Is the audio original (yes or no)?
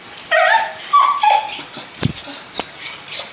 yes